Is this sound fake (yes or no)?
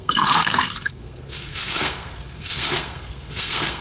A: yes